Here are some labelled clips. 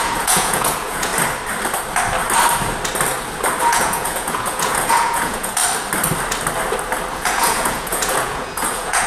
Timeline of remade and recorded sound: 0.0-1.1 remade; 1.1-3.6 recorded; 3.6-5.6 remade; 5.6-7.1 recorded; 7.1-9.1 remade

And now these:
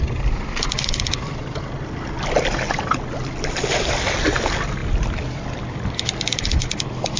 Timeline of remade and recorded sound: 0.0-7.2 recorded